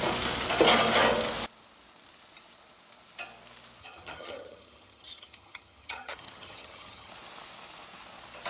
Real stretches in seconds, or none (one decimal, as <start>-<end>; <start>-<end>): 0.0-3.8; 7.1-8.5